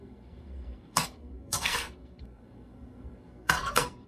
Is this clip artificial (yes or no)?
yes